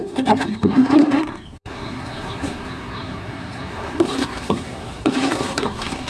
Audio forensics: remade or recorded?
remade